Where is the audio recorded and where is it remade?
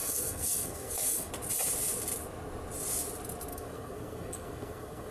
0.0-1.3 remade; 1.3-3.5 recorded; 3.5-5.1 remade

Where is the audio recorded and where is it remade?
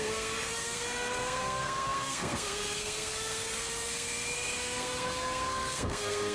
0.0-6.3 remade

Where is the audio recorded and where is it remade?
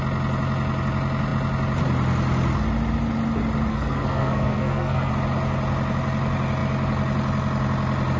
0.0-3.7 recorded; 3.7-5.1 remade; 5.1-8.2 recorded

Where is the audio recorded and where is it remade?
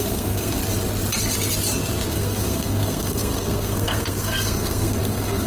0.0-0.6 remade; 0.6-2.1 recorded; 2.1-5.5 remade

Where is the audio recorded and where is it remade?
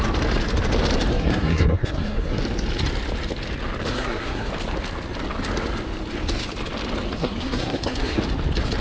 0.0-1.1 recorded; 1.1-2.4 remade; 2.4-3.9 recorded; 3.9-4.5 remade; 4.5-7.2 recorded; 7.2-8.2 remade; 8.2-8.8 recorded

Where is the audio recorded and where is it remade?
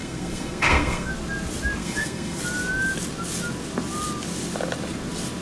0.0-1.1 remade; 1.1-1.8 recorded; 1.8-2.4 remade; 2.4-5.4 recorded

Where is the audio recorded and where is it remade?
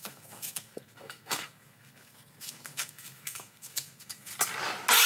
0.0-4.3 remade; 4.3-5.1 recorded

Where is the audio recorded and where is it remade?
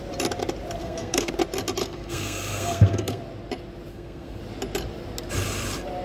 0.0-0.8 recorded; 0.8-1.3 remade; 1.3-1.8 recorded; 1.8-3.2 remade; 3.2-3.9 recorded; 3.9-4.4 remade; 4.4-6.0 recorded